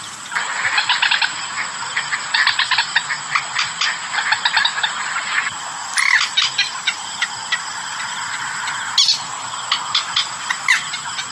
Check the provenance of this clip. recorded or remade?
recorded